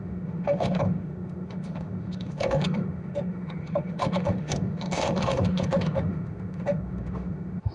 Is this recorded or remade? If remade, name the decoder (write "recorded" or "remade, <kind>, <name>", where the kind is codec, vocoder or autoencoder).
remade, autoencoder, DAC-VAE